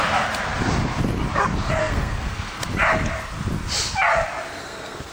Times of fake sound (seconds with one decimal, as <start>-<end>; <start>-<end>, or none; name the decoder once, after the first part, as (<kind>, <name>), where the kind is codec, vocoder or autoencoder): 1.8-2.6 (codec, SNAC); 4.6-5.1